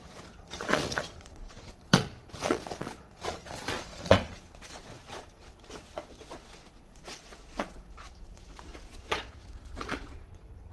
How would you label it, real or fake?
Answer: fake